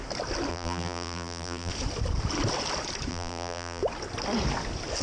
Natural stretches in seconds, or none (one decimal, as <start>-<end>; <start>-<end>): 0.0-0.5; 1.7-3.1; 3.8-5.0